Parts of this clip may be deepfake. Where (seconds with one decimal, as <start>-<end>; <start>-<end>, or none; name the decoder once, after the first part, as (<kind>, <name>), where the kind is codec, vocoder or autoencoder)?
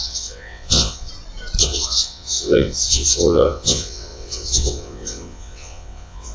0.0-1.1 (vocoder, WaveNeXt); 1.6-6.3